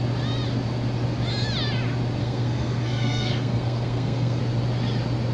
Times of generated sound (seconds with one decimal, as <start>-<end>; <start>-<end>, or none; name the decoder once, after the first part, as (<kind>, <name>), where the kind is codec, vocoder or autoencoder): 2.2-4.4 (codec, SNAC)